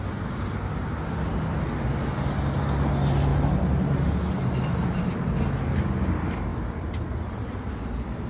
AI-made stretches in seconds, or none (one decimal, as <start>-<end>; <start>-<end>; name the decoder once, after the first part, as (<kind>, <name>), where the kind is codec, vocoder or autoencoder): none

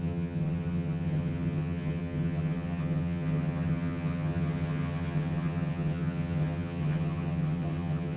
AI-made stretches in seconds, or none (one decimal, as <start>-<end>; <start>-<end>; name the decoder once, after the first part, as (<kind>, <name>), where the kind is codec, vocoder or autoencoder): 0.0-8.2 (vocoder, HiFi-GAN)

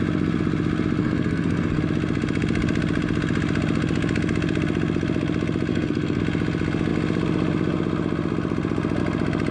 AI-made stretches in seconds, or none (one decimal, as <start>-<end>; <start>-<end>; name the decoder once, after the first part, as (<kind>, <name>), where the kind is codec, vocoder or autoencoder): 1.0-1.8 (codec, SNAC); 5.7-6.2

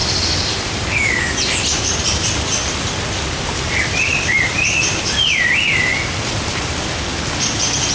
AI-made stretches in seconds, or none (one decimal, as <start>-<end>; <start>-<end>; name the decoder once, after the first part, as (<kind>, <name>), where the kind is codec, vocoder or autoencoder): 0.0-7.9 (vocoder, BigVGAN v2)

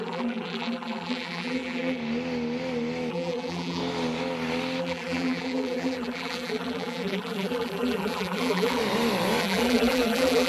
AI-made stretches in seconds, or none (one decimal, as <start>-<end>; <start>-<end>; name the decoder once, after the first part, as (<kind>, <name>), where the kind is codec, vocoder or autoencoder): 0.0-2.0 (vocoder, BigVGAN v2); 3.1-3.8; 4.8-8.8; 9.4-10.5

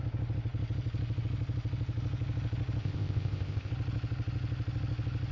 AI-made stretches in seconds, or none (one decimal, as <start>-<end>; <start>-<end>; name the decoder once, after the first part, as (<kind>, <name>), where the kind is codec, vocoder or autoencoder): 2.8-3.7 (codec, ZipCodec)

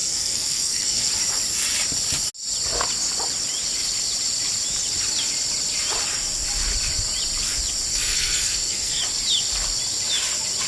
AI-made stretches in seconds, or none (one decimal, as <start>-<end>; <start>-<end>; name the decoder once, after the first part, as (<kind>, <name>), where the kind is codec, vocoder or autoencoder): 0.0-1.1 (codec, SNAC); 7.9-9.0